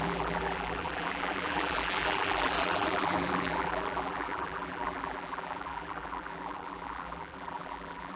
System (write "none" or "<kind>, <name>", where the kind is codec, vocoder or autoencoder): vocoder, BigVGAN v2